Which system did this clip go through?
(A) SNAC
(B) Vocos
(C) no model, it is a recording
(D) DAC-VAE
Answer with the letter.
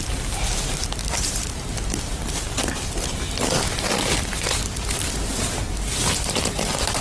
C